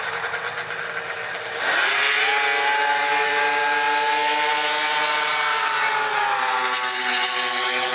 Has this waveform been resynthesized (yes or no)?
no